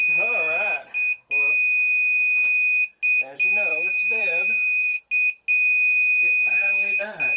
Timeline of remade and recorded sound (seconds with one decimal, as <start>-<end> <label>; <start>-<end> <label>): 0.0-3.7 recorded; 3.7-5.0 remade; 5.0-6.5 recorded; 6.5-7.0 remade; 7.0-7.4 recorded